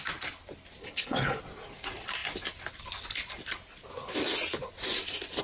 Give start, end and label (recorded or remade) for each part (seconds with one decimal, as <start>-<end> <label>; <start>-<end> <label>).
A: 0.0-0.8 recorded; 0.8-1.4 remade; 1.4-5.4 recorded